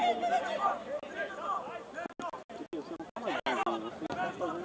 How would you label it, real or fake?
real